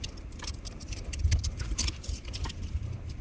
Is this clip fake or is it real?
fake